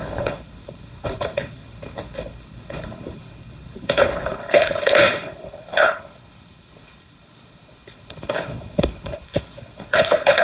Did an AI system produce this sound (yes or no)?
yes